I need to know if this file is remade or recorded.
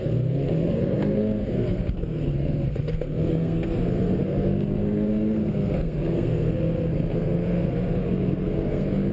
remade